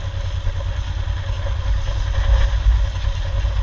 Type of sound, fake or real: real